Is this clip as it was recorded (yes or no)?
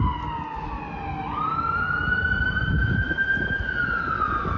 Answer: yes